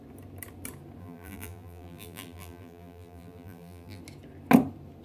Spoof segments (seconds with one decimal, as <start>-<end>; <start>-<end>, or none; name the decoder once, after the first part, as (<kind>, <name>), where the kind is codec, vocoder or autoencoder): 1.0-4.0 (vocoder, BigVGAN v2)